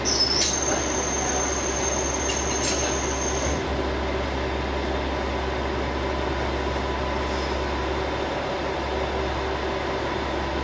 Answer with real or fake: real